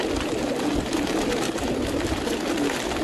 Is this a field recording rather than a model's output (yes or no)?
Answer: yes